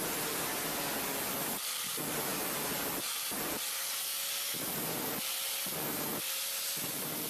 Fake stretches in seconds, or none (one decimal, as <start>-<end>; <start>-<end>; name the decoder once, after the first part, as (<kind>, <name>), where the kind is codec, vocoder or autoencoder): none